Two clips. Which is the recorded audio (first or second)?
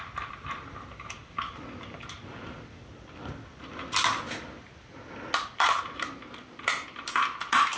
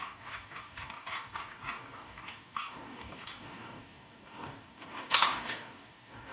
first